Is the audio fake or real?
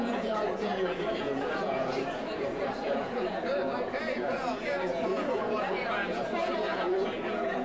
fake